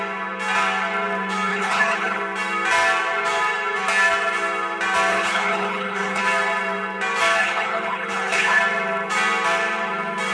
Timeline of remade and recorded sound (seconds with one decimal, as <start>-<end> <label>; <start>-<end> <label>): 0.0-1.5 recorded; 1.5-2.2 remade; 2.2-5.1 recorded; 5.1-6.2 remade; 6.2-7.4 recorded; 7.4-8.6 remade; 8.6-10.3 recorded